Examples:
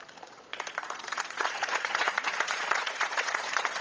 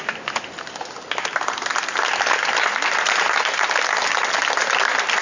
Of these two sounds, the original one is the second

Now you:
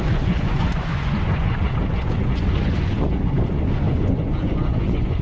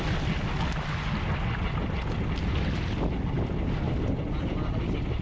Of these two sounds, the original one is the second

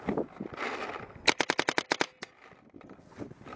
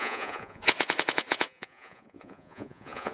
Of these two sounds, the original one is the first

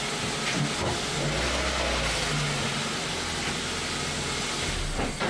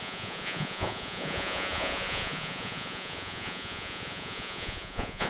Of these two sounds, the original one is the first